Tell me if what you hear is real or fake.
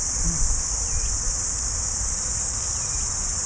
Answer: fake